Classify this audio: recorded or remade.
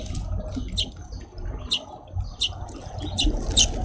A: recorded